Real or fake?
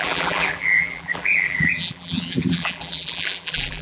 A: fake